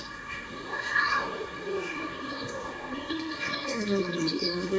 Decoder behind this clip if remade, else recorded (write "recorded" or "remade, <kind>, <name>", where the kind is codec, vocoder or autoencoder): remade, codec, SNAC